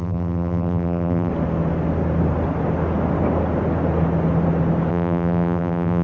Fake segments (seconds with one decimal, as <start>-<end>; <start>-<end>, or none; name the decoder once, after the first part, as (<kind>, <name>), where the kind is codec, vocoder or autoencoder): 0.0-1.3 (vocoder, BigVGAN v2); 4.9-6.0